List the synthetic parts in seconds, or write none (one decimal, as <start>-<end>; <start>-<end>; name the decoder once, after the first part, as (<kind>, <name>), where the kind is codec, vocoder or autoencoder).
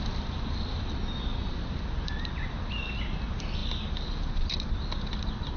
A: 1.3-2.6 (vocoder, BigVGAN v2)